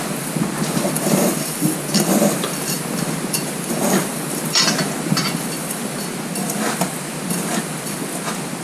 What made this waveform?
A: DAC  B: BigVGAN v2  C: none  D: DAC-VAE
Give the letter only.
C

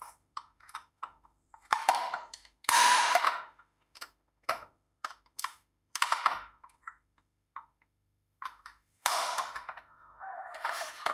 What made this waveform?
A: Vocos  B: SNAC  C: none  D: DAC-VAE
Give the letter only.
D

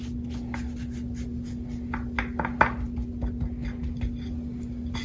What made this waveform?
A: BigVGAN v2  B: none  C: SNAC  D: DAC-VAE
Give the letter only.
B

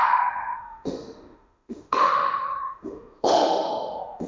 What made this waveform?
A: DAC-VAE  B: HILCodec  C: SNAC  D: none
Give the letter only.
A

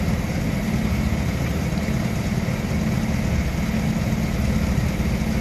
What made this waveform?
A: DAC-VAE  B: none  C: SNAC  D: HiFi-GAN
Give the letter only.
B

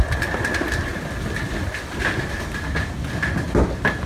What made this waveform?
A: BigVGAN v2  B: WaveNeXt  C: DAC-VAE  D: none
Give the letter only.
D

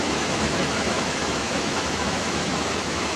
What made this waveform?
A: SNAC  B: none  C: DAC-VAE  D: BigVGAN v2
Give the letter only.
C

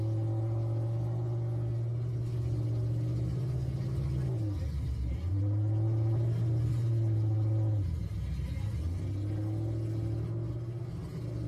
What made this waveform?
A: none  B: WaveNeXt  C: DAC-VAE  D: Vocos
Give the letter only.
A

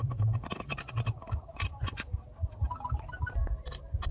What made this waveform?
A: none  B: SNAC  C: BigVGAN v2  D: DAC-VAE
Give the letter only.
A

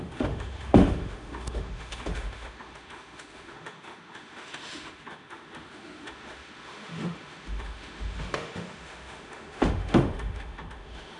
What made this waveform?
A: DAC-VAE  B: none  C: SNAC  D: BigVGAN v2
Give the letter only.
A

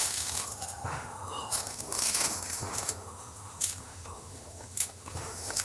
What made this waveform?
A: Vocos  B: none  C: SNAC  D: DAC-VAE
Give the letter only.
D